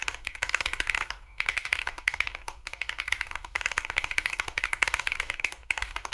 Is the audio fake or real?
fake